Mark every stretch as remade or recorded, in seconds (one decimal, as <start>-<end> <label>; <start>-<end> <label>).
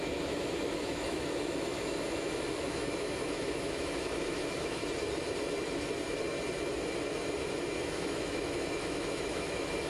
0.0-4.8 remade; 4.8-7.8 recorded; 7.8-9.9 remade